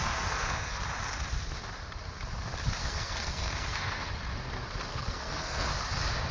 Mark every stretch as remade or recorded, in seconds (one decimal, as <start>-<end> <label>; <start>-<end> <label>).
0.0-0.8 remade; 0.8-2.8 recorded; 2.8-4.1 remade; 4.1-4.9 recorded; 4.9-5.7 remade; 5.7-6.3 recorded